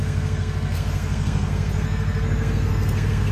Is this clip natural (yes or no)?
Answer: no